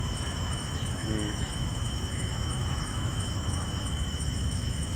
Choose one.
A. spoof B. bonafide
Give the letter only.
A